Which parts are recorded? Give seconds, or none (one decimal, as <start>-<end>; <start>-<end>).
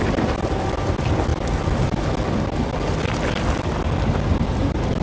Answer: 0.0-5.0